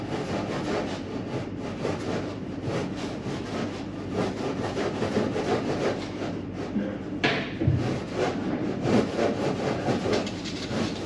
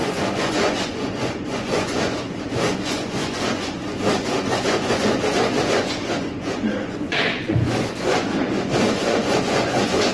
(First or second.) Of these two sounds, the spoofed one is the second